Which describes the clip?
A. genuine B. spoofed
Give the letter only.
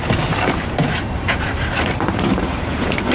B